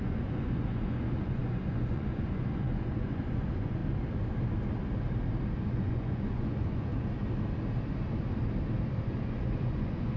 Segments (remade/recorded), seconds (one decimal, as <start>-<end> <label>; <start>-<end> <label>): 0.0-3.8 remade; 3.8-5.7 recorded; 5.7-6.9 remade; 6.9-9.0 recorded; 9.0-10.2 remade